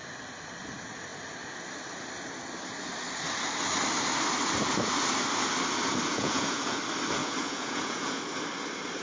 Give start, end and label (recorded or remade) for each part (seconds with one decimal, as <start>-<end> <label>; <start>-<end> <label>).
0.0-6.1 recorded; 6.1-6.8 remade; 6.8-7.2 recorded; 7.2-8.2 remade; 8.2-9.0 recorded